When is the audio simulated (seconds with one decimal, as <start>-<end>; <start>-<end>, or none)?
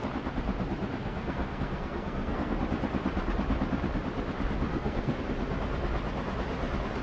1.0-2.6; 4.7-5.2